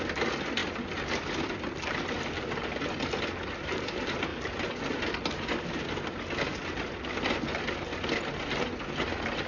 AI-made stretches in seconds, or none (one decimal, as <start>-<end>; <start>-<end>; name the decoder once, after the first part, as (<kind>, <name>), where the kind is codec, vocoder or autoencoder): 0.6-2.7 (vocoder, BigVGAN v2)